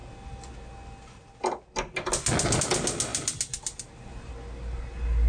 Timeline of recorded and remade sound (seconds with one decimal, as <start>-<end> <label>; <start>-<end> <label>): 0.0-5.3 recorded